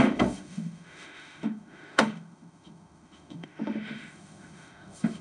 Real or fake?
fake